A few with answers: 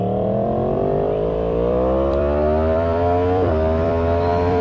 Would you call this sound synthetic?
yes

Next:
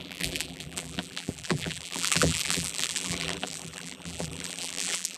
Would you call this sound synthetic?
yes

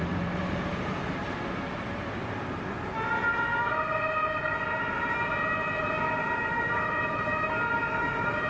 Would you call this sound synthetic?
yes